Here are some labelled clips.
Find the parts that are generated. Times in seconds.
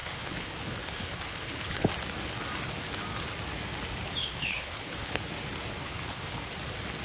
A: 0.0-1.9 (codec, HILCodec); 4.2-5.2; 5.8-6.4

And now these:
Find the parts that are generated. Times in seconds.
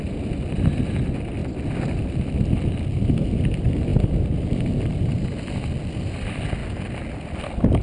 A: none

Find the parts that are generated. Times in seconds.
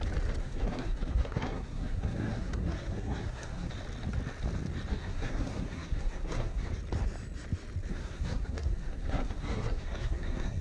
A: 0.4-3.7 (codec, SNAC); 4.9-6.7; 7.9-10.6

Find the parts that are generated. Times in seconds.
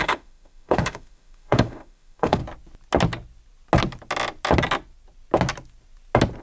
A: 0.0-2.4 (autoencoder, DAC-VAE)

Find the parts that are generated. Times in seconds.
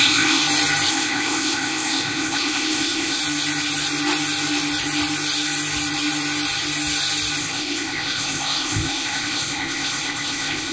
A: 0.0-0.4 (codec, ZipCodec); 0.9-3.2; 7.4-10.7